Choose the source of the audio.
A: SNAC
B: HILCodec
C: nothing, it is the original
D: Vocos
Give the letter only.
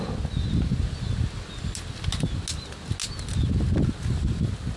C